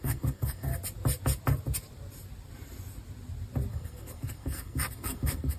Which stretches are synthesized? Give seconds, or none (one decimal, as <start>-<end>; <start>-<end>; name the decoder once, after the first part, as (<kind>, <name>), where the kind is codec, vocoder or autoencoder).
0.0-0.7 (codec, SNAC); 3.7-5.6